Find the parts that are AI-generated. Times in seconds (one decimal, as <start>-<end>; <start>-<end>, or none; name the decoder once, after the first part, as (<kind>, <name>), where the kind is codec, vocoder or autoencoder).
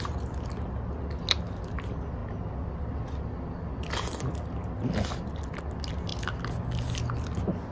none